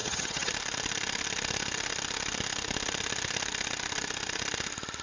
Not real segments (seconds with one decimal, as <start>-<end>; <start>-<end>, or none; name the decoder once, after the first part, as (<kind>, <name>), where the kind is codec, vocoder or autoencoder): 0.0-0.5 (vocoder, HiFi-GAN)